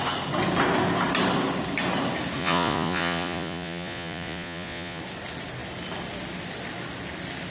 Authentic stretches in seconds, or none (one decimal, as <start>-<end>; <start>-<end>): 0.0-2.4; 5.0-7.5